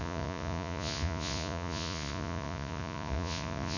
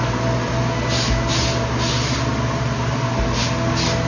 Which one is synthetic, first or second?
first